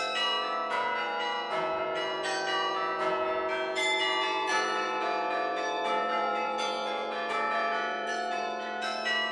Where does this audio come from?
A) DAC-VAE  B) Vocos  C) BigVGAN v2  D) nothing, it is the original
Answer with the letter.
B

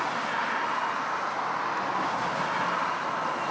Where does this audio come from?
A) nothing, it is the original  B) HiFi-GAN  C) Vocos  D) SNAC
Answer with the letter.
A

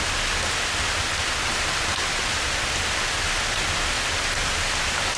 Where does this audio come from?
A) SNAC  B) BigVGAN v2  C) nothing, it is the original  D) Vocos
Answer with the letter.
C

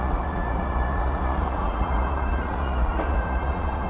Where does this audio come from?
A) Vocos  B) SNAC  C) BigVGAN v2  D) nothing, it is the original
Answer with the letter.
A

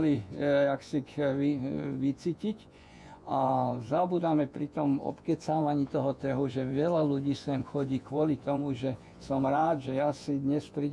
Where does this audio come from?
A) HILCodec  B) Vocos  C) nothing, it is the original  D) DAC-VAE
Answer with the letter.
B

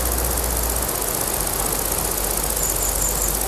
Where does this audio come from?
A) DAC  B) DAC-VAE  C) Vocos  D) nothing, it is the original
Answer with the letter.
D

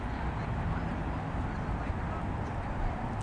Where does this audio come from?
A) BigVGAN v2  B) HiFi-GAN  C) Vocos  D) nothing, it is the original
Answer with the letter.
D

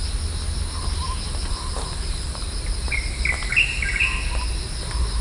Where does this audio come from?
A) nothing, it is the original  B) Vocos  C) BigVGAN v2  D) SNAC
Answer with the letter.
A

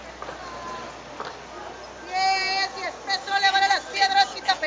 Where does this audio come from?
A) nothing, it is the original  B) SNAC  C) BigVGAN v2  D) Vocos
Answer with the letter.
A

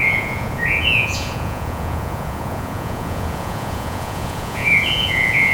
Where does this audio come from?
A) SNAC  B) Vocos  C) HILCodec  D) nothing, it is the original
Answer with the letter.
B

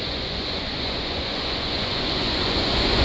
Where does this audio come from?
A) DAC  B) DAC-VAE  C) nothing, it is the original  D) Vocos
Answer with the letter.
D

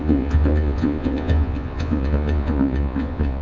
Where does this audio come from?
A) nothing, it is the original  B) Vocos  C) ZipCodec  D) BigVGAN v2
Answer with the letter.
B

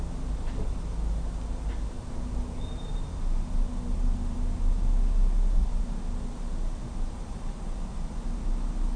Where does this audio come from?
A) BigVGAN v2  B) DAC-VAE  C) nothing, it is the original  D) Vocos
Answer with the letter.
C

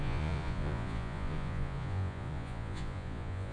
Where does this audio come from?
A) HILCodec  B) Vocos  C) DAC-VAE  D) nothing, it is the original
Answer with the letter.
B